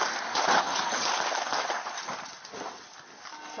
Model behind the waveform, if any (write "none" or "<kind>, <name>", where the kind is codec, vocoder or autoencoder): none